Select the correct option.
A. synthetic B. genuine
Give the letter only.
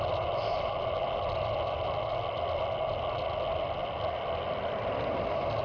B